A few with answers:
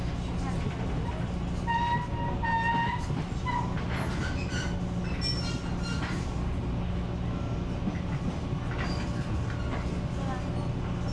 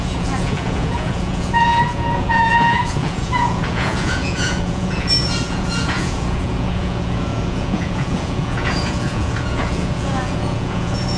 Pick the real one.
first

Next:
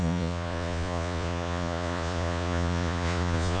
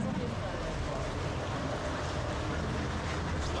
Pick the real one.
second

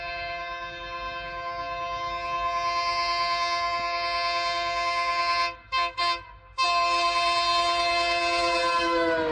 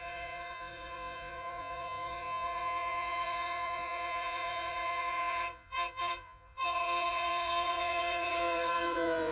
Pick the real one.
first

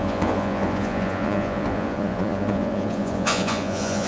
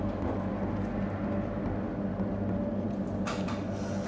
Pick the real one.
second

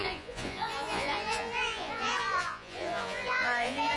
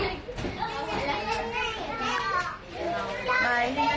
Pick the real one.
second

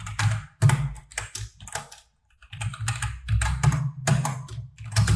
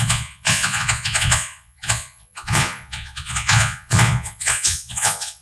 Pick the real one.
first